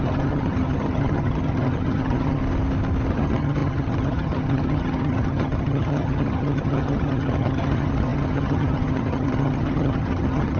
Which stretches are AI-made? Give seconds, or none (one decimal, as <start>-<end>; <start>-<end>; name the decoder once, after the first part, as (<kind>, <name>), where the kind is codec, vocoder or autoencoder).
0.0-2.4 (vocoder, HiFi-GAN); 3.1-10.6